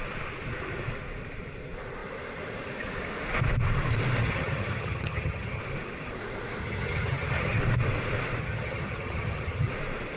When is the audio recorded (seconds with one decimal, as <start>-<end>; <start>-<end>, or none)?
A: 0.0-4.2; 5.6-6.6; 7.6-8.4; 9.7-10.2